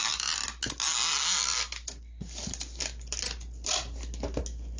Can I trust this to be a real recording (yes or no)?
yes